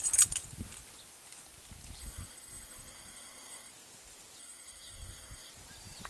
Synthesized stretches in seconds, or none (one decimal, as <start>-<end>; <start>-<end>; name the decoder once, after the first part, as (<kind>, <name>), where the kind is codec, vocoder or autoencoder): 2.0-3.7 (codec, SNAC); 4.4-5.5